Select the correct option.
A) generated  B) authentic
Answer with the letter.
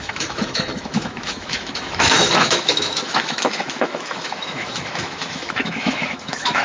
A